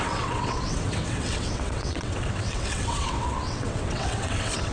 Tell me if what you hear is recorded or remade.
remade